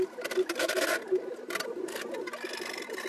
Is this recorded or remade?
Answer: recorded